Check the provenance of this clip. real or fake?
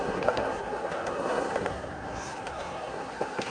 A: fake